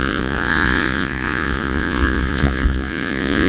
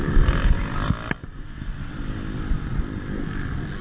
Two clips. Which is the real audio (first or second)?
second